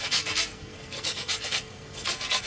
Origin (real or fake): fake